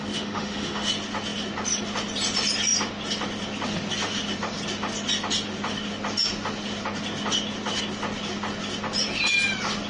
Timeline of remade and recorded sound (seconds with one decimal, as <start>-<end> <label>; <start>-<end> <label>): 0.0-0.9 remade; 0.9-9.9 recorded